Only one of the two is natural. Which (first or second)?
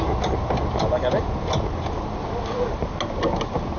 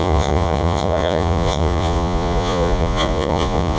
first